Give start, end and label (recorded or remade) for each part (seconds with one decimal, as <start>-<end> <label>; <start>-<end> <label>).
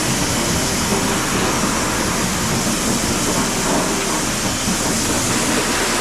0.0-6.0 recorded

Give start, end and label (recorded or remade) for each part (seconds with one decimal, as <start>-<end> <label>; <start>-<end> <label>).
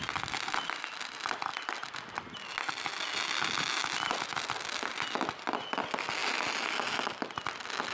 0.0-7.9 recorded